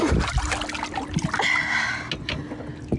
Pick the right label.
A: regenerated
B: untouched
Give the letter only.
B